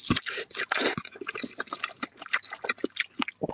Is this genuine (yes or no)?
yes